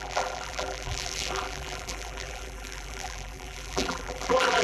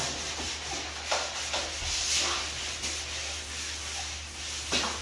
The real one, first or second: second